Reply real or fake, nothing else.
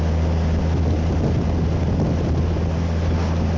real